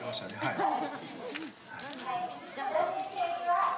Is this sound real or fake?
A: real